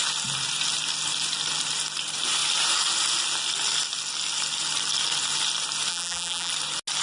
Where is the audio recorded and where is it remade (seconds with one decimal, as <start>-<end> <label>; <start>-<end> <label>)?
0.0-5.9 recorded; 5.9-6.5 remade; 6.5-7.0 recorded